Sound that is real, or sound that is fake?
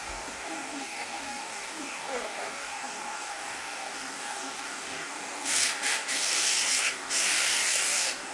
fake